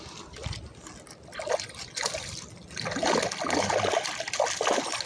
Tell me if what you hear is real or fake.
real